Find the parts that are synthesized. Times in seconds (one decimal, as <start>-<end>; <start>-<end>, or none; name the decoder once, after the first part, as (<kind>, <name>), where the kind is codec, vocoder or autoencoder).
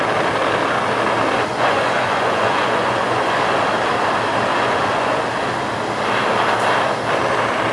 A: 1.5-3.4 (vocoder, Vocos); 4.5-5.2